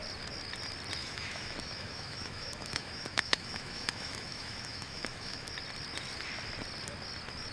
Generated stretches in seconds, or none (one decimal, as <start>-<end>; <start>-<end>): 1.0-5.5